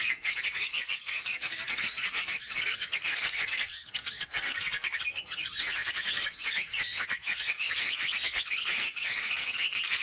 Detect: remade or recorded remade